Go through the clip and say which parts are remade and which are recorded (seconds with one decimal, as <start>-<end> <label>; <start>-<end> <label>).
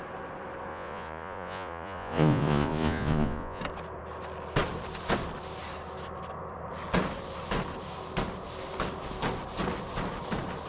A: 0.0-0.7 recorded; 0.7-3.6 remade; 3.6-10.7 recorded